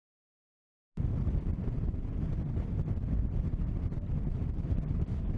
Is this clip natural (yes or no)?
yes